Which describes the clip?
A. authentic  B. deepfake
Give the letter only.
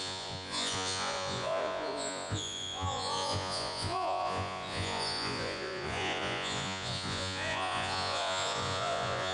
B